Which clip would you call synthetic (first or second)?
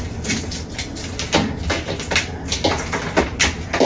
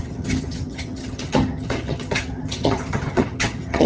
second